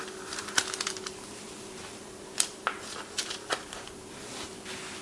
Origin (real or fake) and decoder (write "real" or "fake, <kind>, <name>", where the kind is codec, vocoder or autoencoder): real